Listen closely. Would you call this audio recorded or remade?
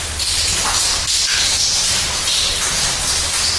recorded